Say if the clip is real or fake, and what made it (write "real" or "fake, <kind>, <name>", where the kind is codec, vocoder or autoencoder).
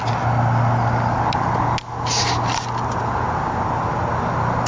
real